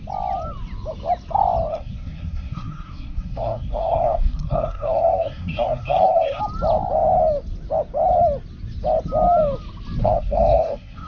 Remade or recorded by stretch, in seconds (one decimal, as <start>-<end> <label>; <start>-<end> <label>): 0.0-1.7 recorded; 1.7-6.4 remade; 6.4-10.0 recorded; 10.0-11.1 remade